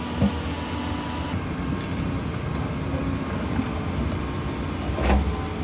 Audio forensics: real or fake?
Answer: real